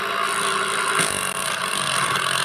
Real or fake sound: real